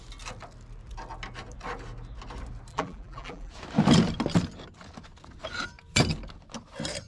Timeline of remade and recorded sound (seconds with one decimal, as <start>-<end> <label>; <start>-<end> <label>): 0.0-2.7 recorded; 2.7-3.5 remade; 3.5-7.1 recorded